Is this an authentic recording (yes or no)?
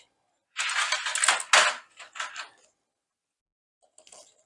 yes